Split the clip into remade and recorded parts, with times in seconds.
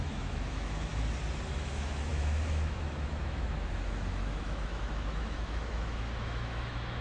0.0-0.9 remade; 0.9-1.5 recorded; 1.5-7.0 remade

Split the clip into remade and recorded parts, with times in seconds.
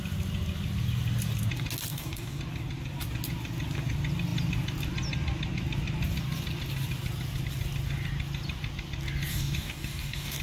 0.0-1.9 recorded; 1.9-2.4 remade; 2.4-9.3 recorded; 9.3-10.4 remade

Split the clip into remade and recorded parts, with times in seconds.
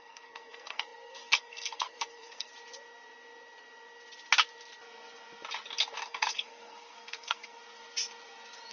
0.0-2.5 remade; 2.5-6.0 recorded; 6.0-7.6 remade; 7.6-8.7 recorded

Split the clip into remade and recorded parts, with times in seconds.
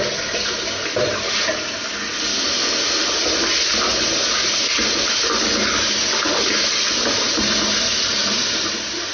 0.0-8.2 recorded; 8.2-9.1 remade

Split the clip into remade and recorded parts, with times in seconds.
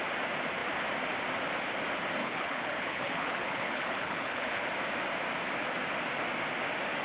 0.0-2.2 recorded; 2.2-4.7 remade; 4.7-7.0 recorded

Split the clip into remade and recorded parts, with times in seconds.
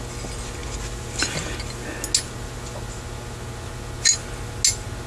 0.0-5.1 recorded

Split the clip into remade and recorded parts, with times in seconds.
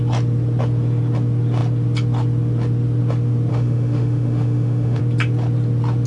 0.0-3.5 recorded; 3.5-5.0 remade; 5.0-6.1 recorded